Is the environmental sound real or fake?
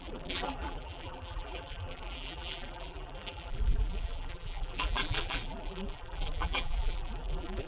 fake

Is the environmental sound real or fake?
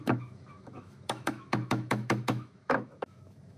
fake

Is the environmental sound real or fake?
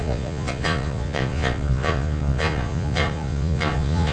fake